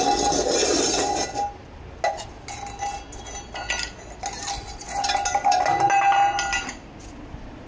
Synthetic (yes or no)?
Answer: no